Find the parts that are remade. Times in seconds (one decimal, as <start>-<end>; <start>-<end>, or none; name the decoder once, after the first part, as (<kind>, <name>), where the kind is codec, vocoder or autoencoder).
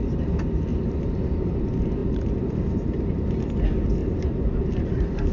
0.7-1.6 (vocoder, BigVGAN v2); 2.0-3.1; 4.0-5.3